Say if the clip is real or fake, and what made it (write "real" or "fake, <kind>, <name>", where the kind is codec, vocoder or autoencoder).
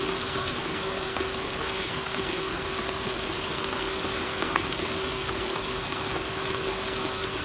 fake, codec, SNAC